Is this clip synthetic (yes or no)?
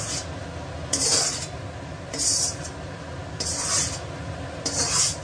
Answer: no